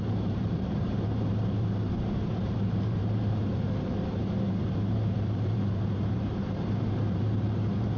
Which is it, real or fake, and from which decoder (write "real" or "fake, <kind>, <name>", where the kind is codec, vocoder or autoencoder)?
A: fake, vocoder, BigVGAN v2